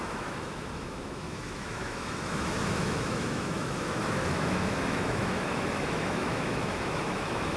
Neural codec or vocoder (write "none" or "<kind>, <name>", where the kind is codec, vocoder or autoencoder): autoencoder, DAC-VAE